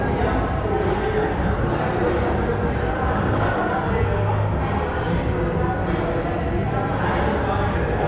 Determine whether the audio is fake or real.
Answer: real